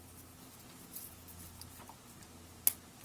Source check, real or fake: real